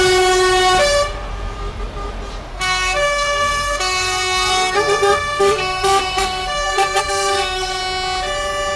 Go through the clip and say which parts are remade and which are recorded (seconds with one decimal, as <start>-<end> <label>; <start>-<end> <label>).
0.0-2.5 recorded; 2.5-7.8 remade; 7.8-8.8 recorded